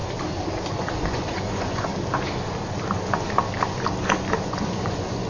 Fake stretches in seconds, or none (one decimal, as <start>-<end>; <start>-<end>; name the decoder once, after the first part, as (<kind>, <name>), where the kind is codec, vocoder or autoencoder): 0.7-1.9 (vocoder, Vocos); 4.5-5.3